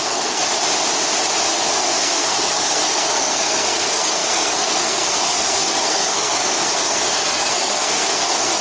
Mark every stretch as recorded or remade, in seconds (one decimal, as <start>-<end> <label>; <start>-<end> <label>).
0.0-0.4 remade; 0.4-1.5 recorded; 1.5-8.6 remade